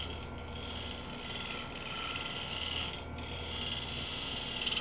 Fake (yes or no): no